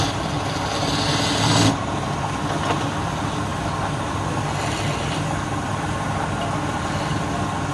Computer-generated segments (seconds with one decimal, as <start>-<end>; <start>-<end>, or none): none